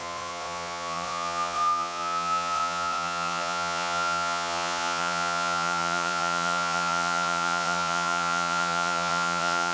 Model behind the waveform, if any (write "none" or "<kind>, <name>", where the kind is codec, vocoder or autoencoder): vocoder, Vocos